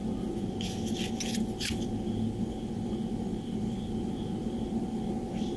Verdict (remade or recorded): recorded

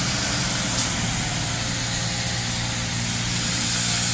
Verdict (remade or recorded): recorded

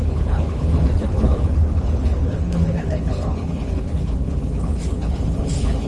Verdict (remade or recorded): remade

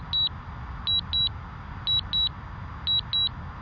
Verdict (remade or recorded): recorded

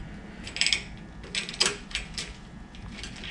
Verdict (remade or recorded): recorded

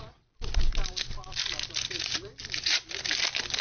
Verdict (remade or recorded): recorded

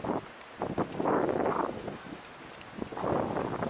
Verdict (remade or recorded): recorded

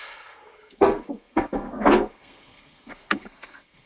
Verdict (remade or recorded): remade